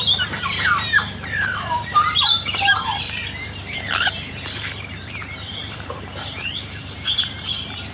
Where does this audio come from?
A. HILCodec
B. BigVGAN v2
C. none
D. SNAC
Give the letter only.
B